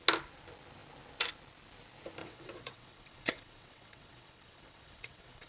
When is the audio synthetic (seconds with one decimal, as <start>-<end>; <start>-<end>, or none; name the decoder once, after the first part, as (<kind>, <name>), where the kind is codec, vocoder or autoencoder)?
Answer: 2.2-5.5 (vocoder, WaveNeXt)